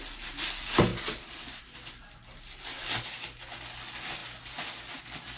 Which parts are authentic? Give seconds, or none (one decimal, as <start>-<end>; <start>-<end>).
0.0-5.4